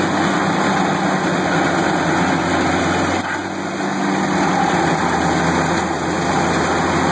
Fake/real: real